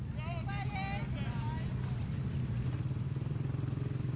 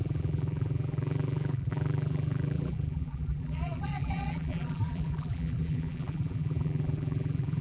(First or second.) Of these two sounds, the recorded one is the first